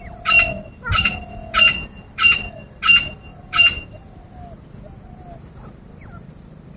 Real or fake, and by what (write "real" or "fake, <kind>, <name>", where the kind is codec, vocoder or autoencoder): real